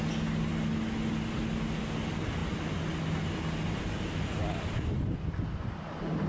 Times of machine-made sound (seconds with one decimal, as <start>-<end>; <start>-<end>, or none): none